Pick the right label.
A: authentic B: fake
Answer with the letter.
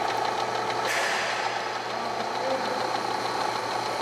A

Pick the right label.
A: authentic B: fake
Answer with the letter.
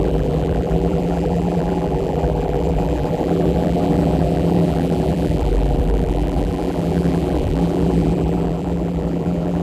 B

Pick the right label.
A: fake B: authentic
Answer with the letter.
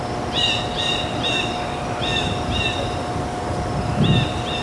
B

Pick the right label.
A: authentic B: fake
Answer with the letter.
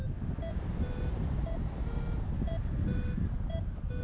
A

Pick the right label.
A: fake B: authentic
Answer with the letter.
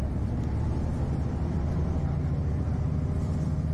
B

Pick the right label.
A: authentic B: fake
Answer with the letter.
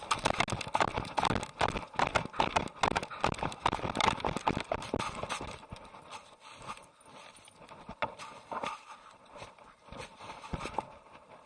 A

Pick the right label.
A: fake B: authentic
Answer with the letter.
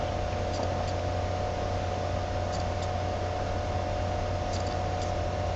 B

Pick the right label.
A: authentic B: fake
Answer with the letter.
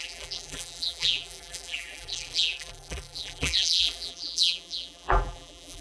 B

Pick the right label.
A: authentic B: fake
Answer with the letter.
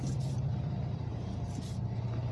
B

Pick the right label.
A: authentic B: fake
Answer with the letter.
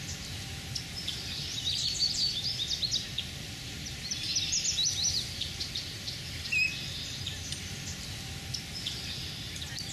B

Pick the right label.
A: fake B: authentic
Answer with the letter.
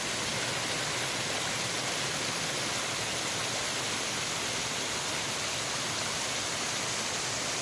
B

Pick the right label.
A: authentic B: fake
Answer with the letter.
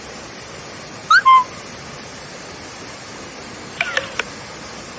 B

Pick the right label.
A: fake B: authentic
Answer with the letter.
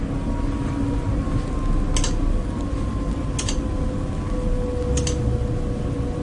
B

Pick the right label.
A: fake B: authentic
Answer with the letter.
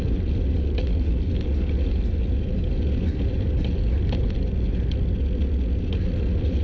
B